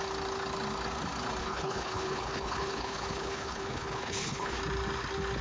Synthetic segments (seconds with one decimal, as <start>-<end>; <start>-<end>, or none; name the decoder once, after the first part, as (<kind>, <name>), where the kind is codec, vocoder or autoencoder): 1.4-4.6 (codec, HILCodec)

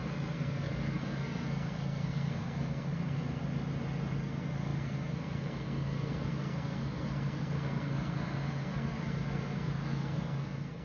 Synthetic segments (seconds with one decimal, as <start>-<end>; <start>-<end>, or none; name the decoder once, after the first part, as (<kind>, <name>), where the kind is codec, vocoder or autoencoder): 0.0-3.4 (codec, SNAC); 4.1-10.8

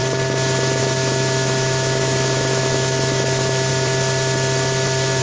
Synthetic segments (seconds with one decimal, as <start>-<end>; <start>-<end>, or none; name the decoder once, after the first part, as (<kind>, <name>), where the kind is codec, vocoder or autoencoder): 0.8-3.7 (autoencoder, DAC-VAE)

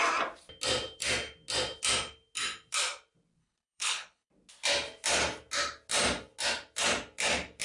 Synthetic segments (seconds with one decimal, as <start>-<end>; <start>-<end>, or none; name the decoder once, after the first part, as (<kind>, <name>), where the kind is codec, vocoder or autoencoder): 3.4-4.3 (codec, HILCodec)